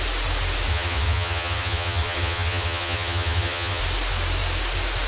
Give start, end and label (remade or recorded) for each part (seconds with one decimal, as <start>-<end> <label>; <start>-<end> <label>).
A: 0.0-0.7 recorded; 0.7-3.8 remade; 3.8-5.1 recorded